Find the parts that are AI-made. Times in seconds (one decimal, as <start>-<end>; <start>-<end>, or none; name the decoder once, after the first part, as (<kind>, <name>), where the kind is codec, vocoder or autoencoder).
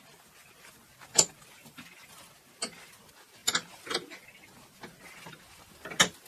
1.6-2.2 (vocoder, BigVGAN v2)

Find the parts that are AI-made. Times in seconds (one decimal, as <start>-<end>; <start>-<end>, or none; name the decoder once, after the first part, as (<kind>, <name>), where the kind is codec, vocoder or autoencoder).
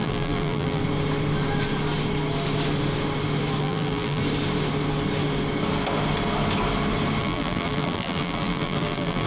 0.0-0.8 (vocoder, BigVGAN v2); 3.6-4.2; 7.2-9.3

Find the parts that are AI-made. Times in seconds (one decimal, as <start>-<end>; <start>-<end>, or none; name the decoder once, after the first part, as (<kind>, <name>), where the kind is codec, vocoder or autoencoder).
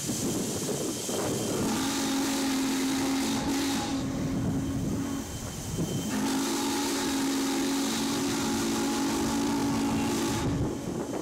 none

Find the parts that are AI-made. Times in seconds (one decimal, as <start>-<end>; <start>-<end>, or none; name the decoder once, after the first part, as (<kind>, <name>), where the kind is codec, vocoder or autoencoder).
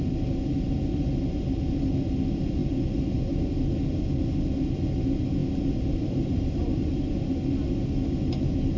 5.4-6.9 (vocoder, BigVGAN v2)